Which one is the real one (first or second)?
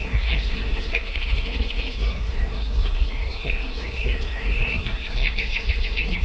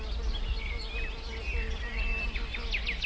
second